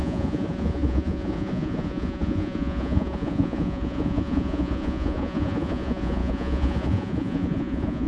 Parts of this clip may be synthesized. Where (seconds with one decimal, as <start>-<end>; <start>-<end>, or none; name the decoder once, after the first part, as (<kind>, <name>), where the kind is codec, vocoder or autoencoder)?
0.0-8.1 (vocoder, Vocos)